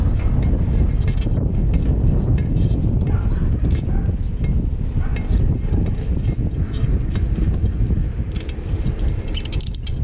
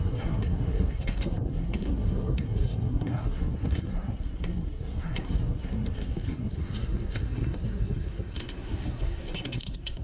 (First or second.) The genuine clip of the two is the first